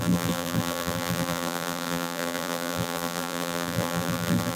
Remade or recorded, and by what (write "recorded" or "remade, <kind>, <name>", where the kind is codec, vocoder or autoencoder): remade, vocoder, BigVGAN v2